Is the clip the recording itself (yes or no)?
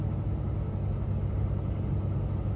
yes